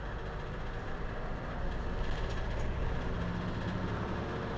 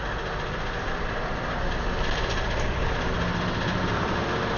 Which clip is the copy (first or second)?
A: second